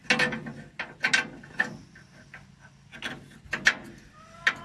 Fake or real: real